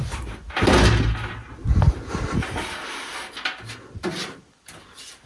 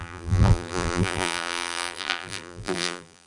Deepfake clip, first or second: second